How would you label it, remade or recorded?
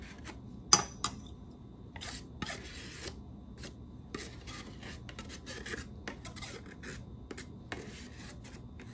recorded